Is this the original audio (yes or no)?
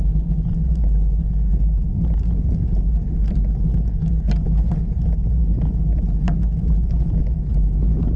yes